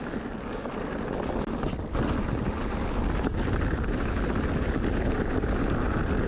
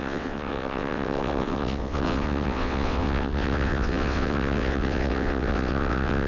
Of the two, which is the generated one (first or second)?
second